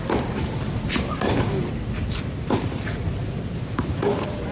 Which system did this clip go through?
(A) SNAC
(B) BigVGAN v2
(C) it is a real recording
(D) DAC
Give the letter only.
C